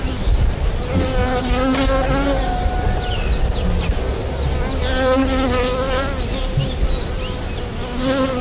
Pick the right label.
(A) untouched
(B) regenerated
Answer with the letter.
A